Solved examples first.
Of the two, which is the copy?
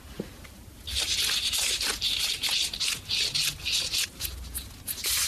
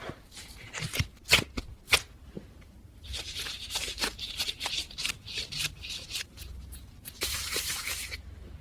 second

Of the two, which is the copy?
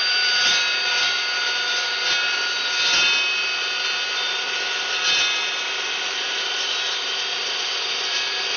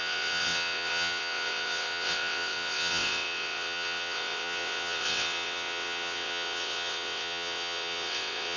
second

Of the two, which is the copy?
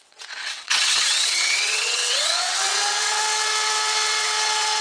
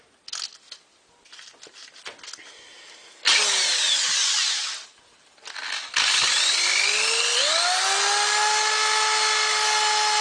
first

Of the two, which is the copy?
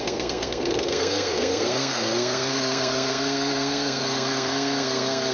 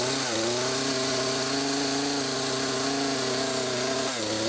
first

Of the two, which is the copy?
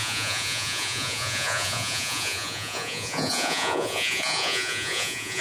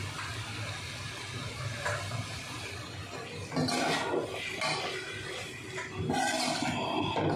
first